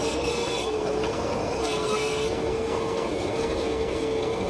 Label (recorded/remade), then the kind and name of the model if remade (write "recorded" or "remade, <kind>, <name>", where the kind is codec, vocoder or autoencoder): remade, codec, SNAC